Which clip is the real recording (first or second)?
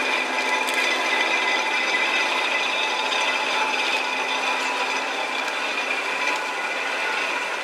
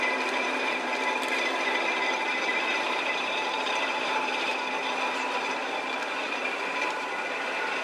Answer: first